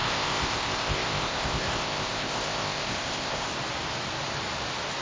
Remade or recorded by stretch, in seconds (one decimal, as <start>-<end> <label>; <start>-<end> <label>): 0.0-3.5 remade; 3.5-5.0 recorded